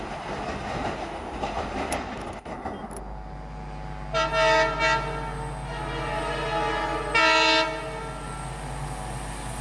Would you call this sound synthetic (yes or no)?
no